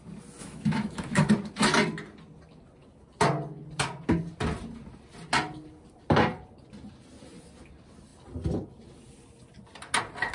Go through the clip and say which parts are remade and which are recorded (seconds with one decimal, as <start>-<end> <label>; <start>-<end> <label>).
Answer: 0.0-0.4 recorded; 0.4-1.3 remade; 1.3-10.3 recorded